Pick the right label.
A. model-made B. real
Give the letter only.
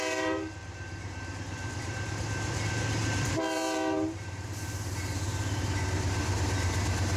A